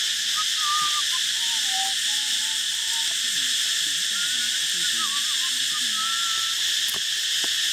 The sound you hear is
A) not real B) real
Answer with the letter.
B